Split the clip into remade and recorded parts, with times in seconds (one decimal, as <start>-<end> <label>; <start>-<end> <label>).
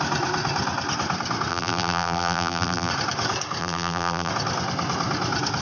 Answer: 0.0-1.5 recorded; 1.5-2.9 remade; 2.9-3.6 recorded; 3.6-4.3 remade; 4.3-5.6 recorded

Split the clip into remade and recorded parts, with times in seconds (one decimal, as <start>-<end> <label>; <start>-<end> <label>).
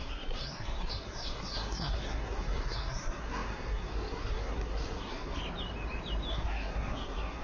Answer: 0.0-5.4 remade; 5.4-6.3 recorded; 6.3-7.4 remade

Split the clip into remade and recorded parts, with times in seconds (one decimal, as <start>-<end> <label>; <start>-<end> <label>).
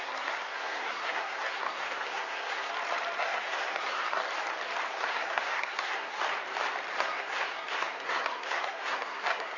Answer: 0.0-2.7 remade; 2.7-3.2 recorded; 3.2-4.2 remade; 4.2-4.9 recorded; 4.9-6.2 remade; 6.2-7.0 recorded; 7.0-9.6 remade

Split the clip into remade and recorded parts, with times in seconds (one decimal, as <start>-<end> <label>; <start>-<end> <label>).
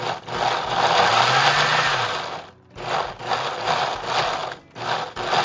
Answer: 0.0-5.4 recorded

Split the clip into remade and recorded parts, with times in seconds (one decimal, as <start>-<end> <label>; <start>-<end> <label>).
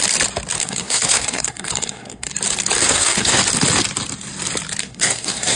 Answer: 0.0-0.6 recorded; 0.6-2.3 remade; 2.3-2.8 recorded; 2.8-3.4 remade; 3.4-4.8 recorded; 4.8-5.6 remade